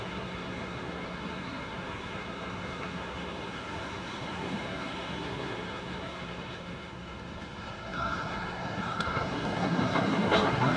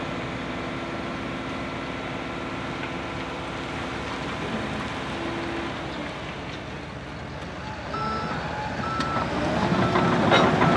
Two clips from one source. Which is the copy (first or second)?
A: first